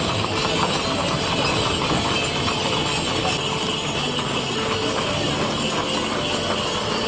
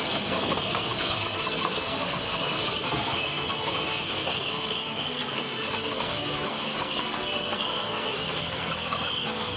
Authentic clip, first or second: first